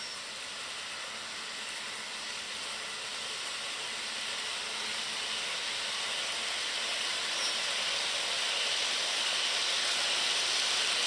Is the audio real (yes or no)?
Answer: yes